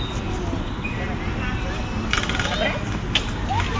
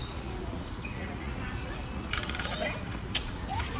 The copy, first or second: second